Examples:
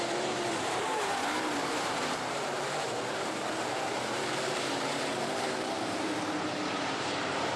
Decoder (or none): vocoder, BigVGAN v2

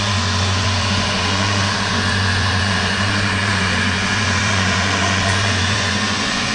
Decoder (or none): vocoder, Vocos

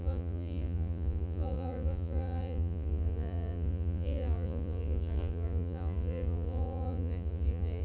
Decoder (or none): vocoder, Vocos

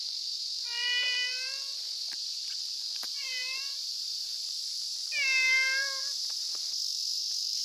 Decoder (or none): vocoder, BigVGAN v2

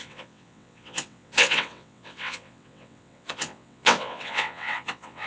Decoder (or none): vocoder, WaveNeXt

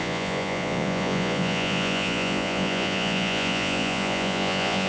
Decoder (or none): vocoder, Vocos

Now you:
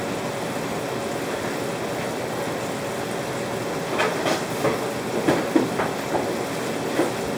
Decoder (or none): none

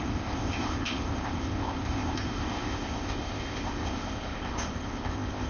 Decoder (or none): codec, ZipCodec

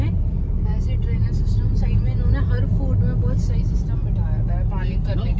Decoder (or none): none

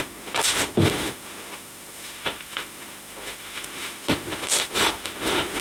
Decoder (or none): autoencoder, DAC-VAE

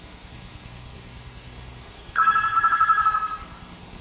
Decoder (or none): codec, SNAC